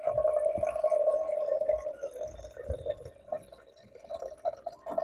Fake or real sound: real